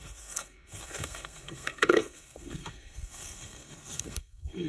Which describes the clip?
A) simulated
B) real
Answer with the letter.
A